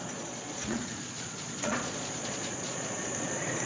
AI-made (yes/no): yes